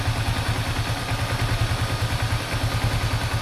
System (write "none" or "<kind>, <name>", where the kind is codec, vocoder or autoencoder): none